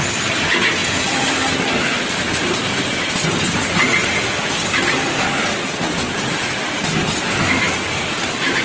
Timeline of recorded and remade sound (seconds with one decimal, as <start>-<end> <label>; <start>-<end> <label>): 0.0-8.6 recorded